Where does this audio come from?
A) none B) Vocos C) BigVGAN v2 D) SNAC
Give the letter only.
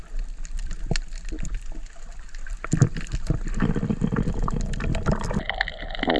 A